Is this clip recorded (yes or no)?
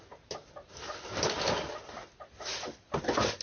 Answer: yes